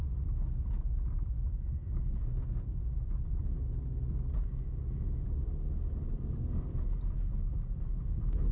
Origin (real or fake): real